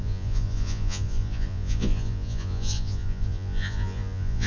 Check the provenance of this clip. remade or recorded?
remade